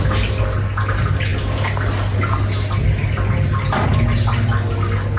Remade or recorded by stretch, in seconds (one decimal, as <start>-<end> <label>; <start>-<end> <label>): 0.0-5.2 recorded